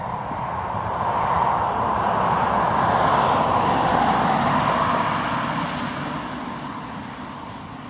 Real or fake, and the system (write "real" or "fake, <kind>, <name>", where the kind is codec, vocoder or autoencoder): real